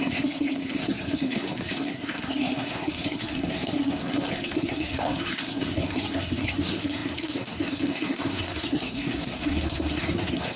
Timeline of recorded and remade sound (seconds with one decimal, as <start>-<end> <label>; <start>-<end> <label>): 0.0-10.6 remade